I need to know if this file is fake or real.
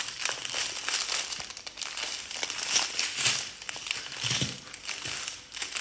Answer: real